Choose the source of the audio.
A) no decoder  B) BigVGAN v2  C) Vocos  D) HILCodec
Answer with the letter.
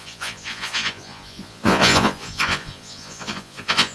C